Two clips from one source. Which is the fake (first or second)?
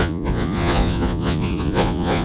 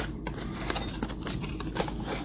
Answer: first